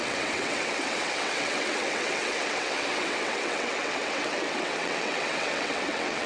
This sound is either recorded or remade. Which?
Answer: remade